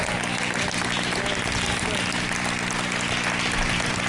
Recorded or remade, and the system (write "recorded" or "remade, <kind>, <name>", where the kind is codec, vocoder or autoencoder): recorded